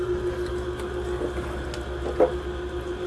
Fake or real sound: real